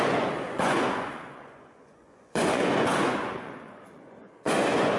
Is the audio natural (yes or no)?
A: no